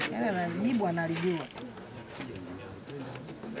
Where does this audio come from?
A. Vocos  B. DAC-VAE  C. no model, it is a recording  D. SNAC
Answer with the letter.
C